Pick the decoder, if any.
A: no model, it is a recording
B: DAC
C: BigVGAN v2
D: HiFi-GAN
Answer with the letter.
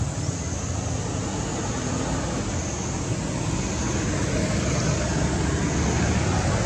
A